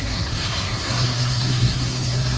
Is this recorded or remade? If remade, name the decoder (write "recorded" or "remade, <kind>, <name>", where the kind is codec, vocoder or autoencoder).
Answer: remade, codec, SNAC